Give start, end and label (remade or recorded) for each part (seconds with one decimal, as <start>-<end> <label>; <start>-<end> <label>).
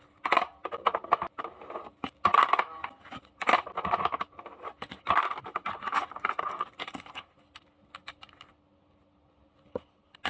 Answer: 0.0-2.3 recorded; 2.3-6.4 remade; 6.4-10.3 recorded